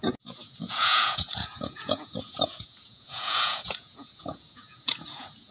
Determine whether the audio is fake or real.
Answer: fake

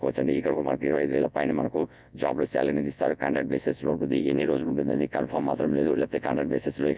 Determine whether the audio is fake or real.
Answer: fake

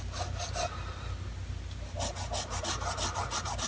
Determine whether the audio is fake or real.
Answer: real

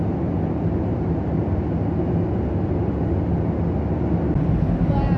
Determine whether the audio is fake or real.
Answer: real